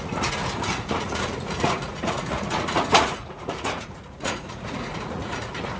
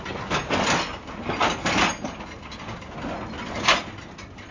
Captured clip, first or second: second